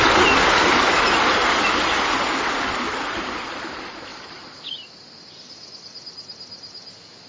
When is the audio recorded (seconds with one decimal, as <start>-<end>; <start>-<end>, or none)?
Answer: 0.0-7.3